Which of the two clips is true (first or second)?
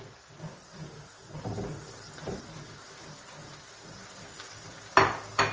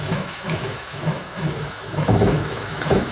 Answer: first